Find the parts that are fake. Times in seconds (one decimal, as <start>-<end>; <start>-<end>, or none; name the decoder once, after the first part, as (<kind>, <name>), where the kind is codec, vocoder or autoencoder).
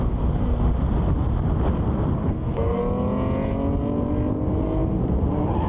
2.2-2.8 (codec, SNAC)